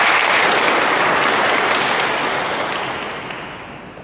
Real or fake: real